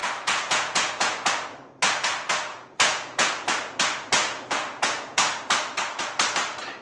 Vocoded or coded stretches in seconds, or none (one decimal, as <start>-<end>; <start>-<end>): 0.0-1.3; 2.5-3.3; 4.2-5.4